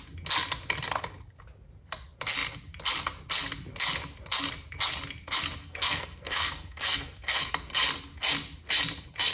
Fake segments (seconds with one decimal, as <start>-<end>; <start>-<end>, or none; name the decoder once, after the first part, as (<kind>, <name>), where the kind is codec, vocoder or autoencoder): 5.6-7.5 (codec, SNAC)